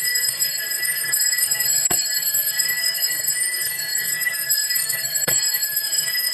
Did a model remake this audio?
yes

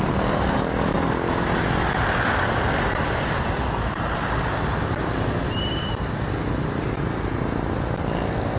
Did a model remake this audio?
no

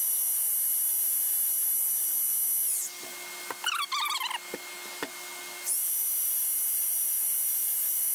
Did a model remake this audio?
no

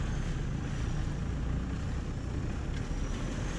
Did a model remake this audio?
no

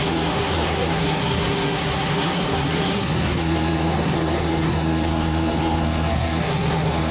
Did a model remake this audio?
yes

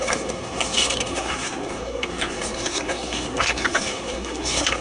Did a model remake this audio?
yes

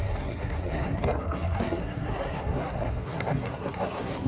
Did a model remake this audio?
yes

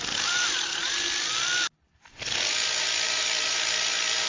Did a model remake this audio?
no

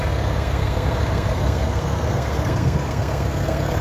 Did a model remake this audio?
yes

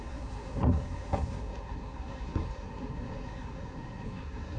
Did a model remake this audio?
yes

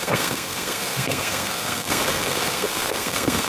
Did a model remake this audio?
yes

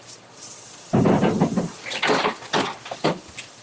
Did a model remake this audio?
no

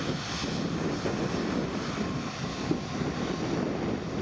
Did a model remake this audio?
no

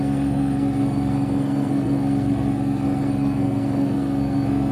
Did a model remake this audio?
yes